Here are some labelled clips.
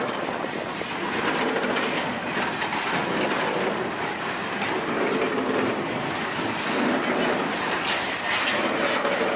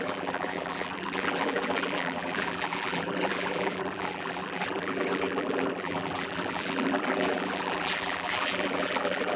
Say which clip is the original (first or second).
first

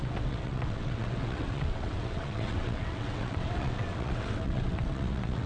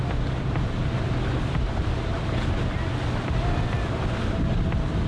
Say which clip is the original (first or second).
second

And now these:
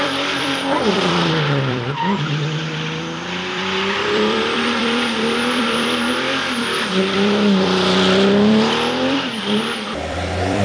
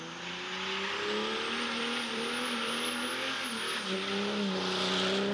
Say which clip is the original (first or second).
second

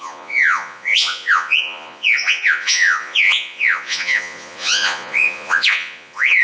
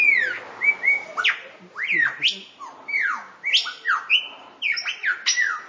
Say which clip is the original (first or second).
second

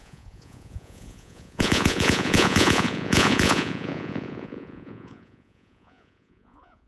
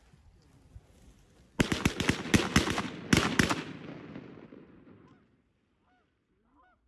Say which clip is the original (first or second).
second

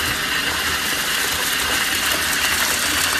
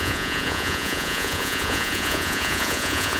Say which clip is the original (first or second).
first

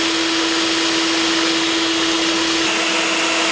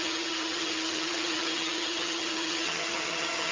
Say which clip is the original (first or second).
first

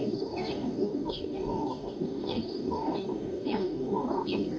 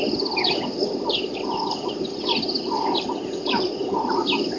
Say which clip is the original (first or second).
second